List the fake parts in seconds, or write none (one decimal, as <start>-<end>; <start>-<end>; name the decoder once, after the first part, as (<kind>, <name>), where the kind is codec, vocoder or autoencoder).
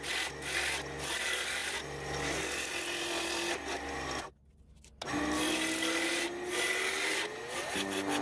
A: none